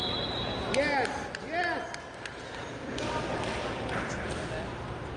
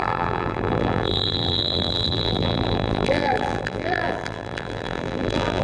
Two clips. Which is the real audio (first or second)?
first